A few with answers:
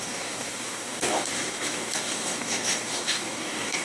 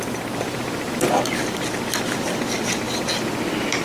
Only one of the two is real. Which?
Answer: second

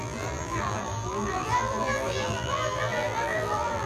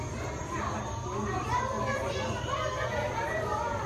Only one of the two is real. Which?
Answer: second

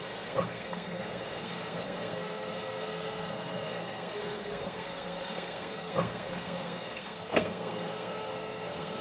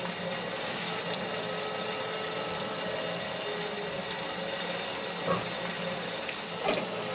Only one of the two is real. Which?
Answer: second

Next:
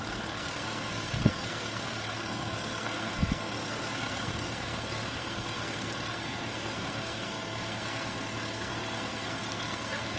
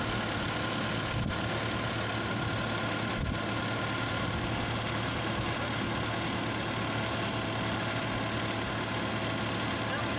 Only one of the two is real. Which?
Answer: second